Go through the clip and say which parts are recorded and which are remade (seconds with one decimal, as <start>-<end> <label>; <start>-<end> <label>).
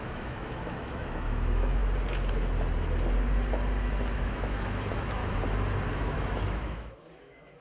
0.0-1.8 remade; 1.8-4.2 recorded; 4.2-5.2 remade; 5.2-5.9 recorded; 5.9-7.6 remade